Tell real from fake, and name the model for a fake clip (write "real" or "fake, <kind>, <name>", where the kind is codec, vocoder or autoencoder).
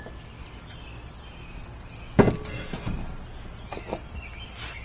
real